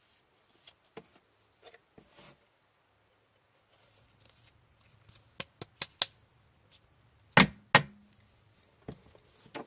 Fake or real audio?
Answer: real